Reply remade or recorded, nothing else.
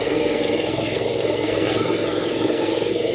remade